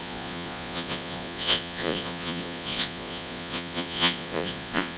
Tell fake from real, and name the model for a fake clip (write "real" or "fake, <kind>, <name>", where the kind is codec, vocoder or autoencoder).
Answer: fake, vocoder, Vocos